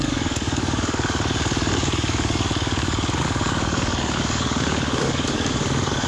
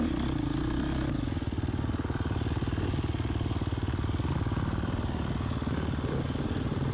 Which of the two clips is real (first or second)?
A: second